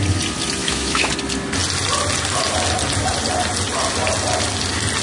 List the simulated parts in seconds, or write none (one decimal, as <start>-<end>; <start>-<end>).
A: 0.6-1.1